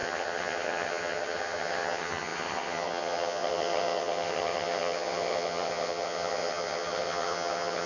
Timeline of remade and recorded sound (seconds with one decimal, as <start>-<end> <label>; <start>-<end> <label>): 0.0-7.9 remade